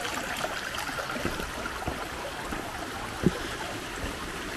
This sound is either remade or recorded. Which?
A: recorded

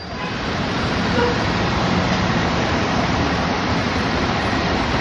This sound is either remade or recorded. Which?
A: remade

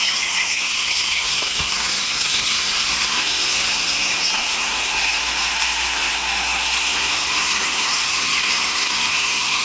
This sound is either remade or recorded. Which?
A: remade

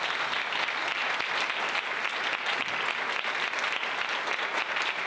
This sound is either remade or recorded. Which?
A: recorded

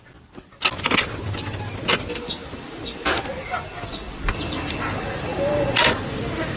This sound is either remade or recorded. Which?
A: recorded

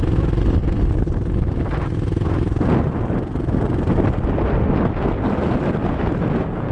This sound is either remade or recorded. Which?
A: recorded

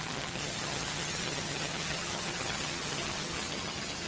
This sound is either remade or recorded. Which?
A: remade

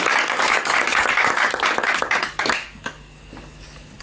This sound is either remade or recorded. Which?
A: remade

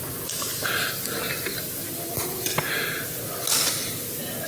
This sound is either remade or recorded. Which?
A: recorded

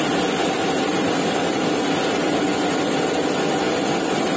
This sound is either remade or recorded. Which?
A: recorded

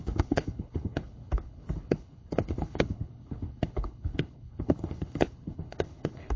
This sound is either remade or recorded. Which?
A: remade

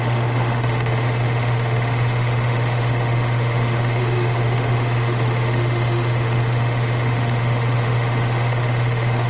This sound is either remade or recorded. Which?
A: remade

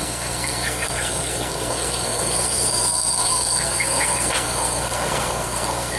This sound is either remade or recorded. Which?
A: remade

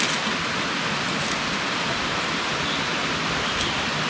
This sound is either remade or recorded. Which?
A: recorded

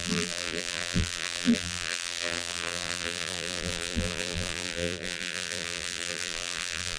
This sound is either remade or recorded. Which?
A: remade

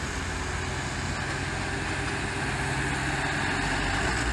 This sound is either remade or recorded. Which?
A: recorded